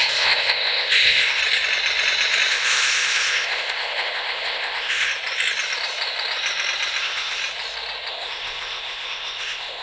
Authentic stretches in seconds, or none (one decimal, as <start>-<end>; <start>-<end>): 1.4-2.5; 5.1-7.0; 7.4-8.1